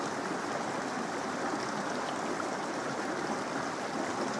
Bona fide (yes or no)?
yes